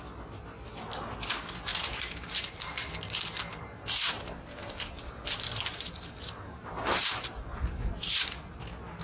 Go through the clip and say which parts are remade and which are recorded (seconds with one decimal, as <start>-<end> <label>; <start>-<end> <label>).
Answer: 0.0-1.7 recorded; 1.7-2.9 remade; 2.9-3.5 recorded; 3.5-8.6 remade; 8.6-9.0 recorded